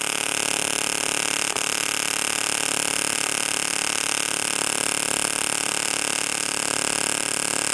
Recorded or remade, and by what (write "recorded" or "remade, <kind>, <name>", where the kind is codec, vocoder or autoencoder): recorded